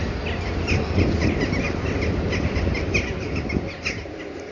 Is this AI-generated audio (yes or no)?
no